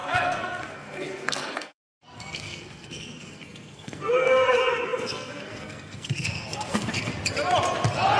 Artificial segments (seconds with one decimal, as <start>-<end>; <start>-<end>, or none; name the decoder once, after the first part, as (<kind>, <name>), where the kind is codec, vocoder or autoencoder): 0.0-7.1 (codec, SNAC)